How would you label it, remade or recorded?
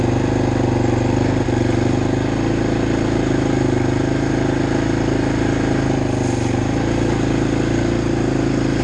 recorded